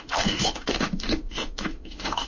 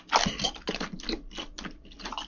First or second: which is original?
second